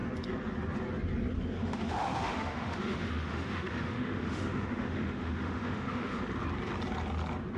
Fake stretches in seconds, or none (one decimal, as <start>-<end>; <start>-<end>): 1.6-6.2